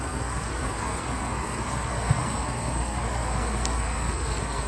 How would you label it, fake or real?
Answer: fake